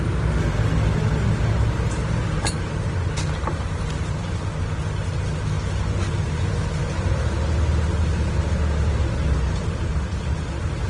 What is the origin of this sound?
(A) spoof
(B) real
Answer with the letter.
B